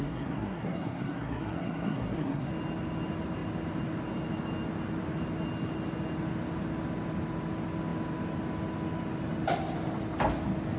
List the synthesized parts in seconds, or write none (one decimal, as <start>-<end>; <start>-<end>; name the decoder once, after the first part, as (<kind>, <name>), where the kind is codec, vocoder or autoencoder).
0.0-2.5 (codec, SNAC)